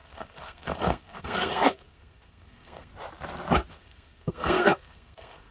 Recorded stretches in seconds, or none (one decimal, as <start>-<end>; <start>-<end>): 2.9-3.7